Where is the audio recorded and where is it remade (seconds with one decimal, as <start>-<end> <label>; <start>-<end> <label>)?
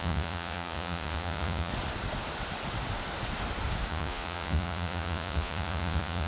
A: 0.0-1.7 remade; 1.7-3.9 recorded; 3.9-6.3 remade